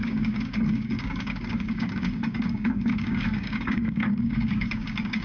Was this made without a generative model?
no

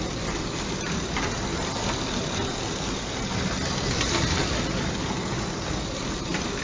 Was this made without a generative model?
yes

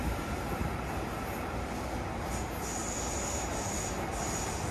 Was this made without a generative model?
yes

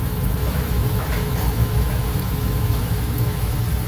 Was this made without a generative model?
no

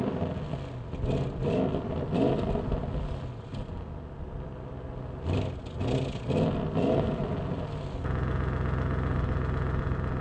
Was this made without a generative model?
yes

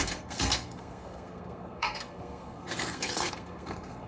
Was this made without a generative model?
no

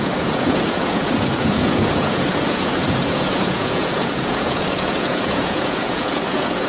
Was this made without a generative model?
no